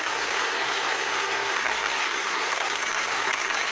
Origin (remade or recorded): remade